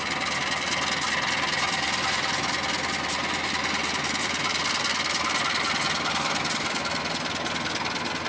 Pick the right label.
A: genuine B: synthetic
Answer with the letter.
A